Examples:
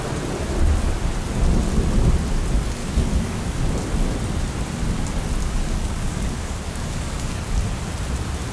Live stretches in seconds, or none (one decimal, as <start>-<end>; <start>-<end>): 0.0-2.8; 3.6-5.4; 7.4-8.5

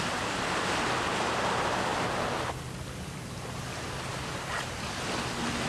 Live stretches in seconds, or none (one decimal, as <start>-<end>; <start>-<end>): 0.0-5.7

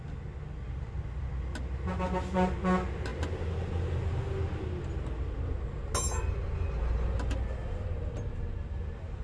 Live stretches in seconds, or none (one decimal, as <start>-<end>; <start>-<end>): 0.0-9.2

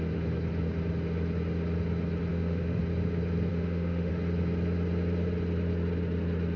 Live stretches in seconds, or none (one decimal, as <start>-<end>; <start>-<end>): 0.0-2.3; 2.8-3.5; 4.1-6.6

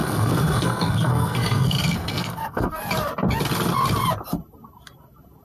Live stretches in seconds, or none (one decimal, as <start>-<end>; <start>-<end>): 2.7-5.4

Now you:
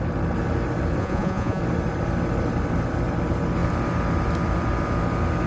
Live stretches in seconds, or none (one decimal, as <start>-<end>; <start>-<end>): 0.0-1.0; 1.6-5.5

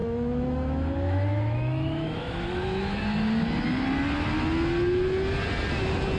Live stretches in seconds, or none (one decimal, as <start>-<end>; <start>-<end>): 3.0-6.2

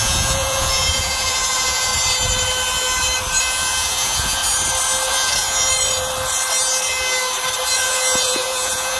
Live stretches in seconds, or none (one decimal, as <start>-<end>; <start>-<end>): 1.9-3.4; 4.4-5.1; 5.7-7.7